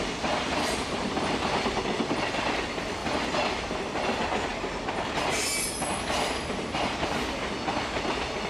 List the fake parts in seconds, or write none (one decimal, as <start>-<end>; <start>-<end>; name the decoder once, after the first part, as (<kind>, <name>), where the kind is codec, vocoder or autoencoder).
none